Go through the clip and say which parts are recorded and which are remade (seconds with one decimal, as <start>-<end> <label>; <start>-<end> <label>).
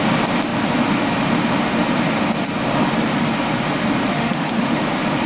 0.0-4.1 recorded; 4.1-4.8 remade; 4.8-5.3 recorded